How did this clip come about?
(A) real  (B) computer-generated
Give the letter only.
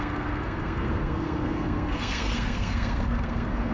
B